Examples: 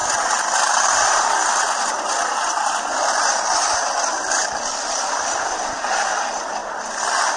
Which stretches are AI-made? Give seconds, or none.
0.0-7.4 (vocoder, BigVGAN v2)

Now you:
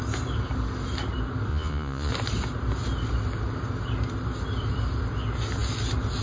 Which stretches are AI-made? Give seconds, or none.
1.5-2.1 (vocoder, Vocos)

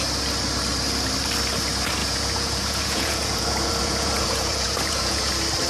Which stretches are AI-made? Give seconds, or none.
2.0-5.3 (vocoder, Vocos)

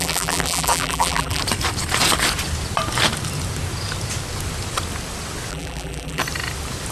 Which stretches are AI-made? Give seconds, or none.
0.0-1.4 (vocoder, BigVGAN v2); 5.5-6.2

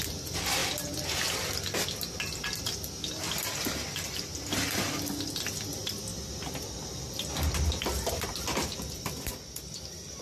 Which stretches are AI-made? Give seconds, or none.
none

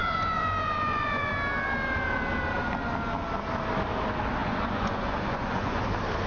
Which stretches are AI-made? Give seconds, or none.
0.0-1.3 (vocoder, Vocos); 4.4-5.8

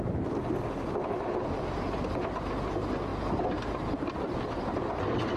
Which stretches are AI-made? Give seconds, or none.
3.1-4.9 (vocoder, BigVGAN v2)

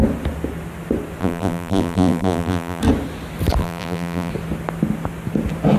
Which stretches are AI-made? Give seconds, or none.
1.2-2.8 (vocoder, BigVGAN v2); 3.6-4.3